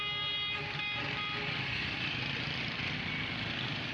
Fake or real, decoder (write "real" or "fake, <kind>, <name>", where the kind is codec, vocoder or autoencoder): real